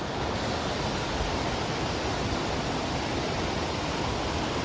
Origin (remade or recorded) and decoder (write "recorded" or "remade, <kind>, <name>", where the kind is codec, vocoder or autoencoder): recorded